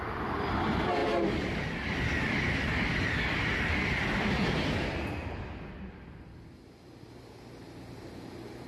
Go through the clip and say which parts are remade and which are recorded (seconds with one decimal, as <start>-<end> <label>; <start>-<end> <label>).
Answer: 0.0-8.7 recorded